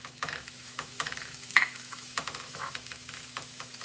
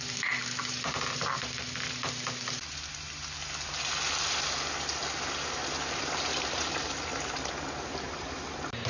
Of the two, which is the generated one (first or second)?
first